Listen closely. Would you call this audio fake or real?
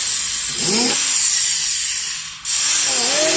real